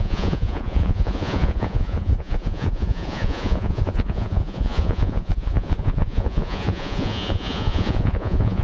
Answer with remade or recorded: remade